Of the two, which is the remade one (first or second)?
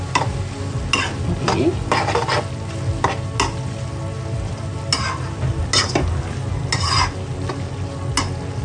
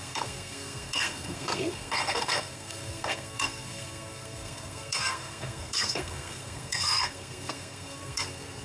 second